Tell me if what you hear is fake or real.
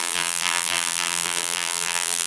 fake